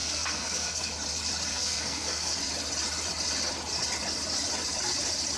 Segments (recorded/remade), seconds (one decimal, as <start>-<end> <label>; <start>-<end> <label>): 0.0-0.9 remade; 0.9-1.5 recorded; 1.5-2.4 remade; 2.4-5.4 recorded